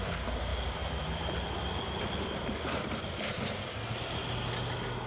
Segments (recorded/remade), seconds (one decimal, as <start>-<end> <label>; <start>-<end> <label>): 0.0-0.5 recorded; 0.5-3.3 remade; 3.3-5.1 recorded